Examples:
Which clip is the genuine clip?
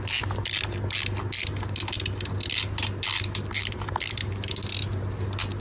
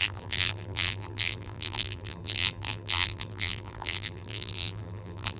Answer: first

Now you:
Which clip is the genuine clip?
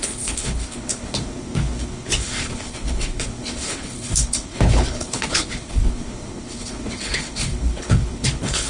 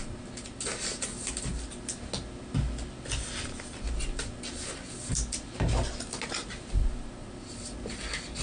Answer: second